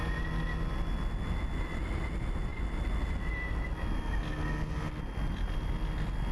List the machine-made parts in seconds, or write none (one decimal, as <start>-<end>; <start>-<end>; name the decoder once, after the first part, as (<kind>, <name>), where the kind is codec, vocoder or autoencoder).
none